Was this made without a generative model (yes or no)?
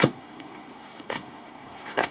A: no